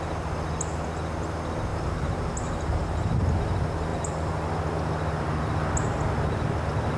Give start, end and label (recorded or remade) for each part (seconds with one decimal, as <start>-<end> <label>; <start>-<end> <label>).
0.0-1.7 recorded; 1.7-3.3 remade; 3.3-7.0 recorded